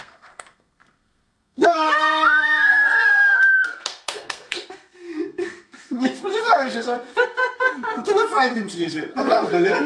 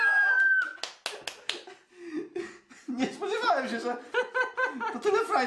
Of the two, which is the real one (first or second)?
second